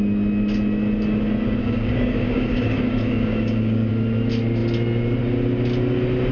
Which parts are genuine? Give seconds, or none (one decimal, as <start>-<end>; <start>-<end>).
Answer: 0.0-1.6; 3.9-6.3